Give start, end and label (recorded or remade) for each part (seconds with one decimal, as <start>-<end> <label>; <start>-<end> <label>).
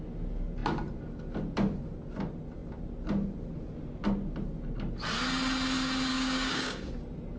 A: 0.0-6.1 recorded; 6.1-6.9 remade; 6.9-7.4 recorded